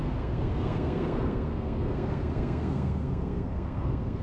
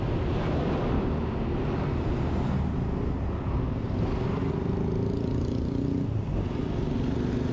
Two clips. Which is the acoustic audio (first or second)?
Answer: second